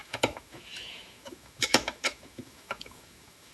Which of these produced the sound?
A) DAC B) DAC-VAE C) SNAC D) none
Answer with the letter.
B